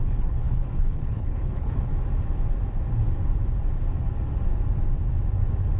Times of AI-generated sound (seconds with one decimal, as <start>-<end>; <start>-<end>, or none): 0.0-1.9